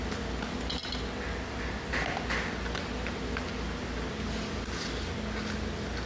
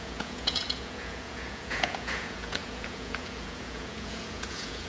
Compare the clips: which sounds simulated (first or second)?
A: second